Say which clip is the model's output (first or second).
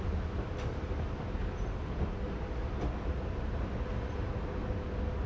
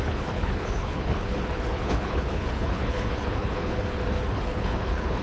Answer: second